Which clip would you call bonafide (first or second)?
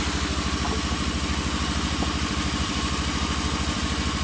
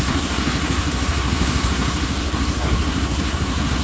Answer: first